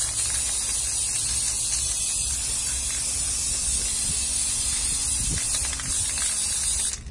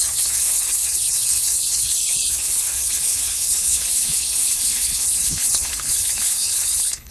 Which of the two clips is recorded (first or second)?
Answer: first